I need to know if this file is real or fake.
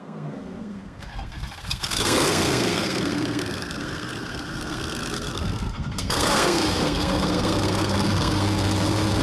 fake